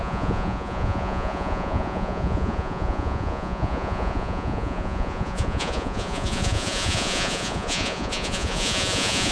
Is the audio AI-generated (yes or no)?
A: yes